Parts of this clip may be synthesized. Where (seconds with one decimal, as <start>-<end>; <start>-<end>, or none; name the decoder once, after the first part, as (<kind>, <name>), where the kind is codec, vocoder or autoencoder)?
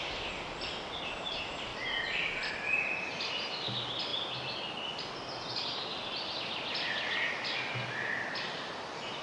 none